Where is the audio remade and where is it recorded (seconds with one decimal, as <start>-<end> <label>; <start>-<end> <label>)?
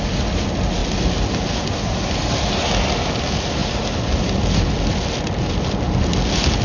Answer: 0.0-6.6 recorded